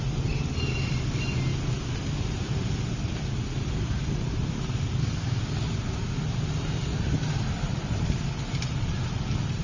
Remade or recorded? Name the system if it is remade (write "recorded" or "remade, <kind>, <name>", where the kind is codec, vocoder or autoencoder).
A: recorded